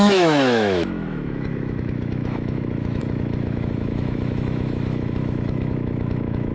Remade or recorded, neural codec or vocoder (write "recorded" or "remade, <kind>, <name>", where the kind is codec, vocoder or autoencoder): remade, autoencoder, DAC-VAE